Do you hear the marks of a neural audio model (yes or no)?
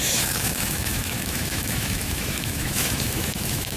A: yes